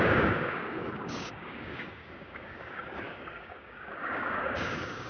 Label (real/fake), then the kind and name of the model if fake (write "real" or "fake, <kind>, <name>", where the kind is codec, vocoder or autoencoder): fake, codec, DAC